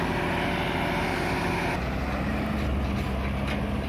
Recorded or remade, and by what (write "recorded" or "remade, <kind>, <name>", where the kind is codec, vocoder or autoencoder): recorded